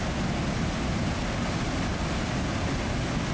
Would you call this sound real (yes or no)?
yes